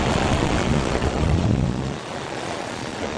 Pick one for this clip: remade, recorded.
remade